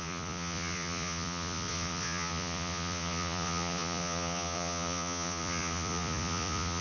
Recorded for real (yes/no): no